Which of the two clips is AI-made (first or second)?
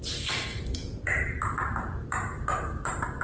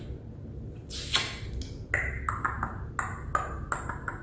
first